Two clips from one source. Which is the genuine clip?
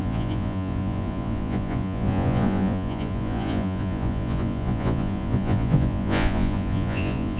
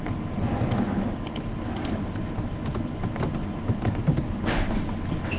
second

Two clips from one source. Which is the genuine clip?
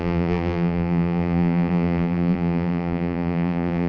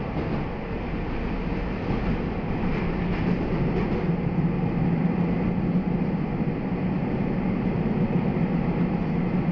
second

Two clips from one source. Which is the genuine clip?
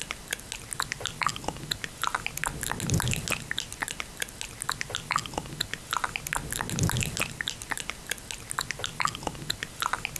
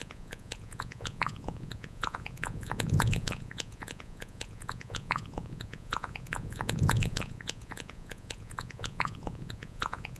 first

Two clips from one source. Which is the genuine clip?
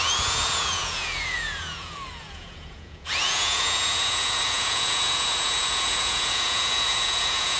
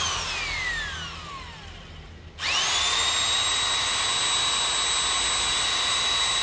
second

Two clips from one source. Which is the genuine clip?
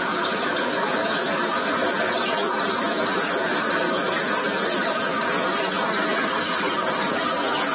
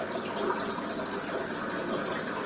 second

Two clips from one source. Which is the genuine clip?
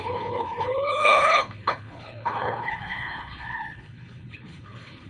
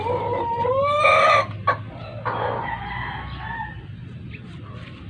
second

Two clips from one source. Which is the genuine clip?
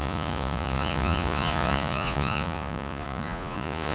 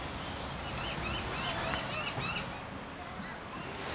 second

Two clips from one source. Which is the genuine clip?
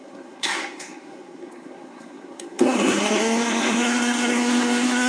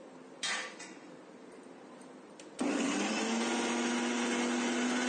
second